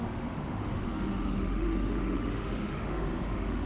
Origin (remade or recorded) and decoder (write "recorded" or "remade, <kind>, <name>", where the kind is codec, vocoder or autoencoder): remade, autoencoder, DAC-VAE